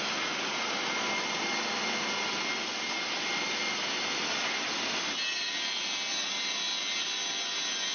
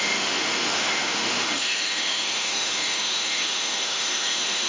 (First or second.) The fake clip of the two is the second